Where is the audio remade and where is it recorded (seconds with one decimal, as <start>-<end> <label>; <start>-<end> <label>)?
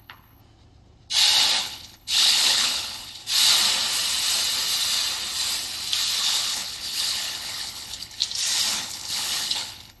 0.0-0.4 remade; 0.4-1.6 recorded; 1.6-3.2 remade; 3.2-6.2 recorded; 6.2-8.2 remade; 8.2-8.7 recorded; 8.7-10.0 remade